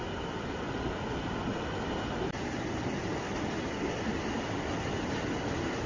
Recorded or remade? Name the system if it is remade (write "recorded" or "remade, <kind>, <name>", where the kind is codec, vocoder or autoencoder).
recorded